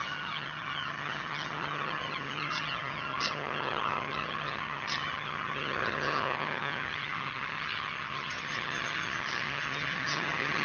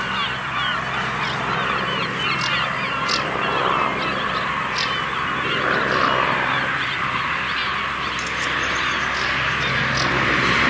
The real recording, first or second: second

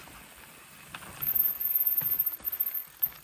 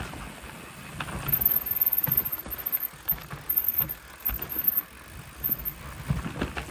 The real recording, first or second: second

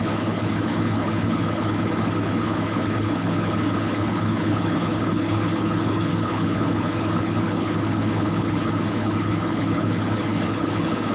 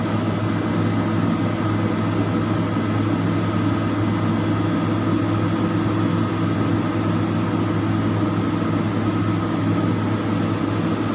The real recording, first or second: second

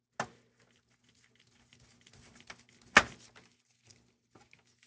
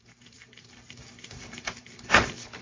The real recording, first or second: first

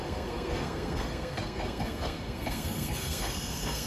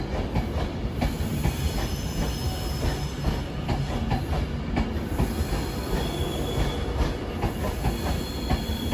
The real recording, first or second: second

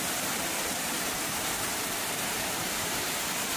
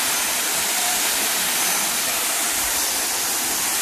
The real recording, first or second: second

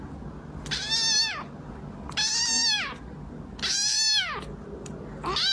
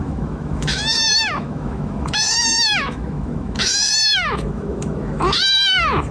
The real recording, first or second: first